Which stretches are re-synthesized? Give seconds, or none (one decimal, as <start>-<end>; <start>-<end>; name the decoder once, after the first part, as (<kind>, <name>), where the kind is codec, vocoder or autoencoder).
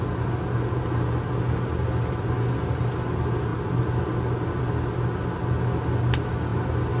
none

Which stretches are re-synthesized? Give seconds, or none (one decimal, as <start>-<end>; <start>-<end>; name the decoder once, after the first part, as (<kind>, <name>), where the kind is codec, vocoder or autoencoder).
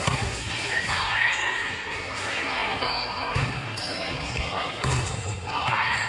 0.0-6.1 (codec, SNAC)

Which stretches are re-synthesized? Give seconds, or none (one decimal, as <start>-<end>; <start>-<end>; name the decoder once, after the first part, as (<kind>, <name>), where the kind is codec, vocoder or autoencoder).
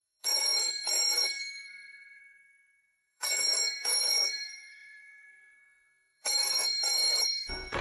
0.0-7.8 (codec, SNAC)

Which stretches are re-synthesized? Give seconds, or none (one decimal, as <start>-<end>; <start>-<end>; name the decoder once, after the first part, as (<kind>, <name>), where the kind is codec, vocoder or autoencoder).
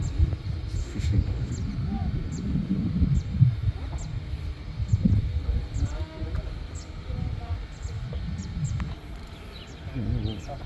0.8-1.5 (autoencoder, DAC-VAE)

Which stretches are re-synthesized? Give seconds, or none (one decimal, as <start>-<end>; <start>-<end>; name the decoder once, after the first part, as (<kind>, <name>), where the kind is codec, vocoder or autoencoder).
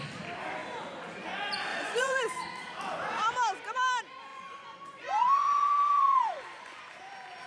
1.7-2.2 (vocoder, Vocos); 4.3-6.8